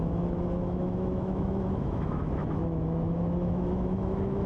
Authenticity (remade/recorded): remade